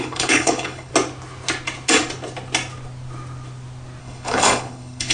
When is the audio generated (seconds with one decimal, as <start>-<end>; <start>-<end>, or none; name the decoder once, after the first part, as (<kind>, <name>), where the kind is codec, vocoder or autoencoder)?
0.0-0.9 (codec, HILCodec); 4.0-5.1